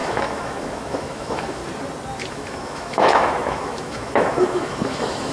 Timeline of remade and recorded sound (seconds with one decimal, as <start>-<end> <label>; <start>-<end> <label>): 0.0-1.6 remade; 1.6-2.3 recorded; 2.3-5.3 remade